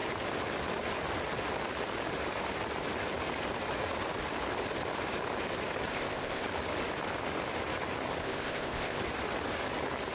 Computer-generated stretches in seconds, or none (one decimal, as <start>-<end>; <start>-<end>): 5.9-6.4; 8.2-9.0

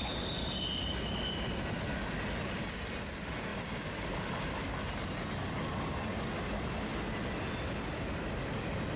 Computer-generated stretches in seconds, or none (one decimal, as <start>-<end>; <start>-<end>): none

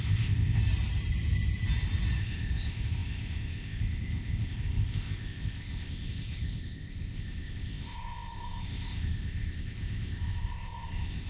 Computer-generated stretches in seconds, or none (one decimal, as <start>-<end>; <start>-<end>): 0.0-0.6; 2.2-11.3

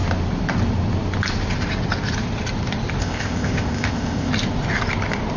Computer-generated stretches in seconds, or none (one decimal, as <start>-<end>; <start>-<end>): 3.0-4.3

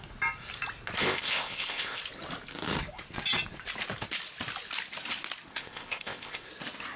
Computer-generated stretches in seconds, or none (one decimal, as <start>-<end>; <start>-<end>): 1.0-2.0; 5.5-6.5

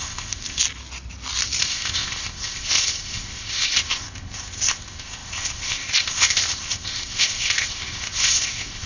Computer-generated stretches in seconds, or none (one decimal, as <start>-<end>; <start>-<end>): 0.0-0.6; 1.6-8.9